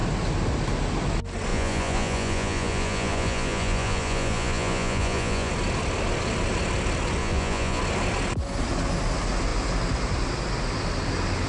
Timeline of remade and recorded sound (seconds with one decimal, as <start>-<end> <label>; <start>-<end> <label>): 0.0-1.5 recorded; 1.5-5.5 remade; 5.5-7.2 recorded; 7.2-7.8 remade; 7.8-11.5 recorded